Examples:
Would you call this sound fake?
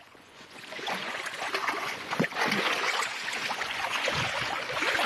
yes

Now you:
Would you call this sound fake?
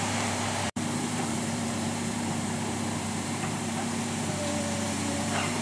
yes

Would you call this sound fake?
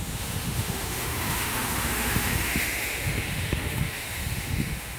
yes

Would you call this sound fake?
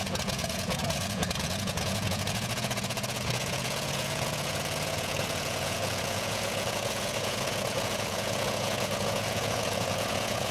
yes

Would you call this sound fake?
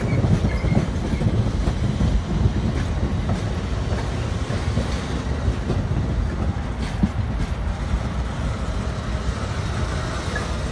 no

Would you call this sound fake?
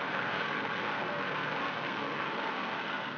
yes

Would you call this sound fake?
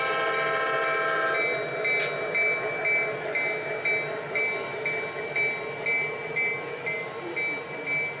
no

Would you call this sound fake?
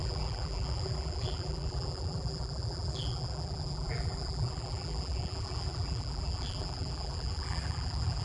yes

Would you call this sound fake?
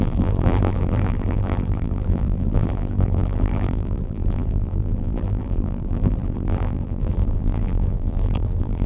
yes